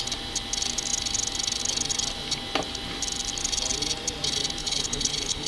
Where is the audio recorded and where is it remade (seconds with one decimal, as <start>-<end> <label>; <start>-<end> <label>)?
0.0-4.6 recorded; 4.6-5.5 remade